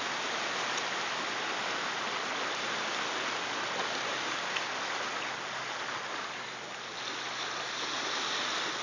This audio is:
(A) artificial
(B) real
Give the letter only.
B